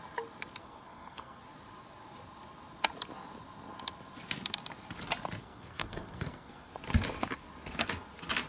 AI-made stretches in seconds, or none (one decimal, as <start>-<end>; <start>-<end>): 0.6-1.4; 5.4-6.7